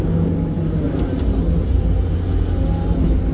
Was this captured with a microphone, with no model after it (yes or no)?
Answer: yes